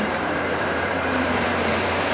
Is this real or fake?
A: fake